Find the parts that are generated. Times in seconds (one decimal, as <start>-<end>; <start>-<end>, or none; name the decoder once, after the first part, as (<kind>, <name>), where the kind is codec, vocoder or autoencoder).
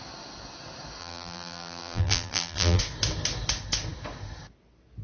1.0-2.8 (vocoder, BigVGAN v2)